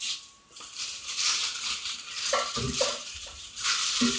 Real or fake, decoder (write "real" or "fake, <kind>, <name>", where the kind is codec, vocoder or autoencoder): fake, vocoder, BigVGAN v2